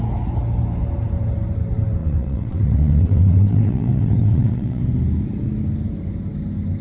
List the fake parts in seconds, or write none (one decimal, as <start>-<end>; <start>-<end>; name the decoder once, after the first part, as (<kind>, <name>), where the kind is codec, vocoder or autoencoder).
2.0-4.8 (vocoder, WaveNeXt)